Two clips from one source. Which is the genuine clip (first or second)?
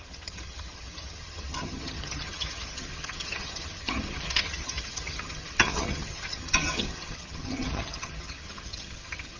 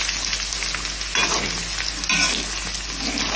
second